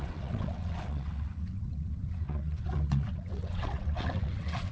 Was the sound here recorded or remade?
remade